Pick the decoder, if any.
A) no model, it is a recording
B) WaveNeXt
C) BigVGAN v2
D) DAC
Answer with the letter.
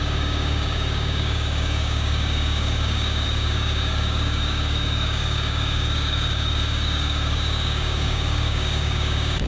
D